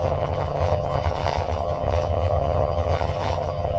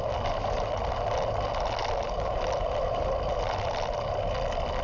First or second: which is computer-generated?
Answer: first